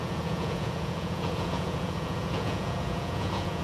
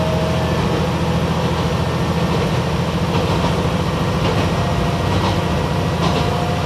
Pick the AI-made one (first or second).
first